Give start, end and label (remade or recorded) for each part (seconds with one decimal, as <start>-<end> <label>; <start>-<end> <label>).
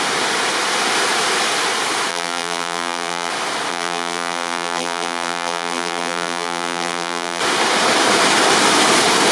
0.0-2.1 recorded; 2.1-3.3 remade; 3.3-3.7 recorded; 3.7-7.4 remade; 7.4-9.3 recorded